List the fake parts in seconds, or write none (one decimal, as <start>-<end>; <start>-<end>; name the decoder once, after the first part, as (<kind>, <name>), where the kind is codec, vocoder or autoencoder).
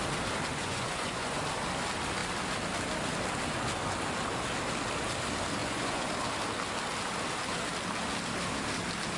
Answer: 0.5-1.4 (vocoder, Vocos); 5.6-6.1